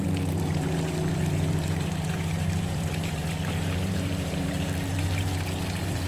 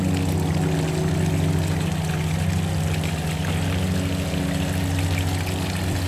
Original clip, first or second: second